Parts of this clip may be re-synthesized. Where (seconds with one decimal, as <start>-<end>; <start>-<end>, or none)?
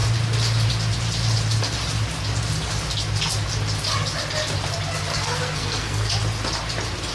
5.1-6.1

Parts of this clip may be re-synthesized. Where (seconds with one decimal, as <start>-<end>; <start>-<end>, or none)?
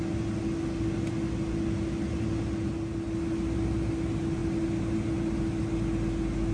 none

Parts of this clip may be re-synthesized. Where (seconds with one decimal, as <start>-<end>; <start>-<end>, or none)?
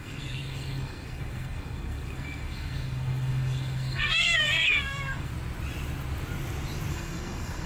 0.0-5.3; 6.9-7.7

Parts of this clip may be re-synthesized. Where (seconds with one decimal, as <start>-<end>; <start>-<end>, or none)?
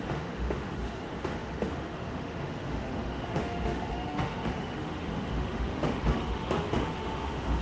0.0-7.6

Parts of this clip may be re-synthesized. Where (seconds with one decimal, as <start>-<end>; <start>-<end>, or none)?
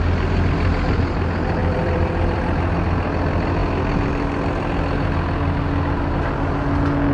1.6-2.4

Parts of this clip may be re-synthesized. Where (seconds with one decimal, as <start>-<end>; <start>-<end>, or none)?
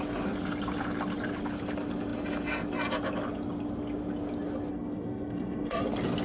4.7-5.8